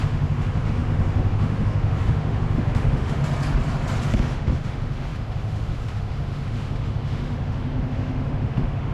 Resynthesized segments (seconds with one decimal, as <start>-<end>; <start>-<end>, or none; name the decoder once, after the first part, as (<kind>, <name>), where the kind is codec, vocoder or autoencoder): 0.0-3.2 (autoencoder, DAC-VAE); 4.0-8.9